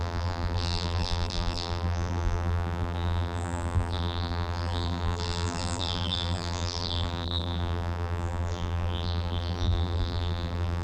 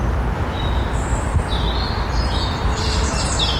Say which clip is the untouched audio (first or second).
second